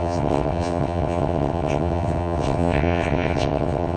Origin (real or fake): fake